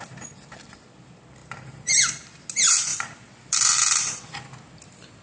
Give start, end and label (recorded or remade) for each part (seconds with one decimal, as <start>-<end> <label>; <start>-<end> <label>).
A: 0.0-1.4 recorded; 1.4-2.4 remade; 2.4-2.9 recorded; 2.9-4.6 remade; 4.6-5.2 recorded